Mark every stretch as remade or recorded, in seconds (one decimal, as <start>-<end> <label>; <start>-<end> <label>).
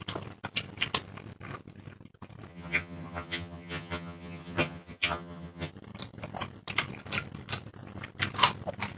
0.0-2.5 recorded; 2.5-5.7 remade; 5.7-9.0 recorded